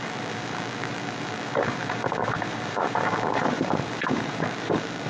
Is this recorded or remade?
remade